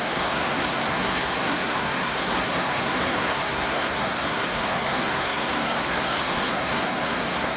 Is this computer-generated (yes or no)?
yes